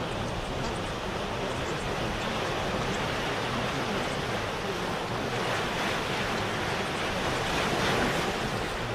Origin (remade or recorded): recorded